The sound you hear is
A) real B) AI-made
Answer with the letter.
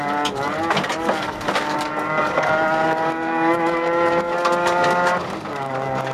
B